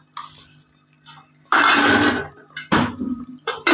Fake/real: fake